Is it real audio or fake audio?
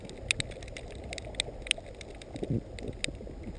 real